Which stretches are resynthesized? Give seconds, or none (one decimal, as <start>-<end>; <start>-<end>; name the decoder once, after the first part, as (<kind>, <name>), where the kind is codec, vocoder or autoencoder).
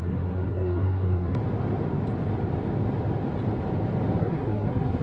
0.0-1.4 (codec, SNAC); 4.2-5.0